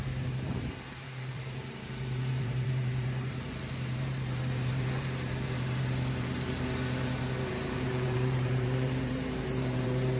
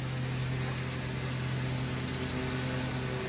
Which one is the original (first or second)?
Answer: second